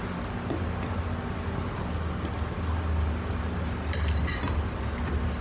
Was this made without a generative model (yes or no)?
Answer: yes